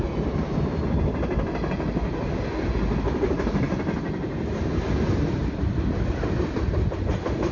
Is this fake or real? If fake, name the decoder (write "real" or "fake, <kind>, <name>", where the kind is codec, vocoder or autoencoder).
real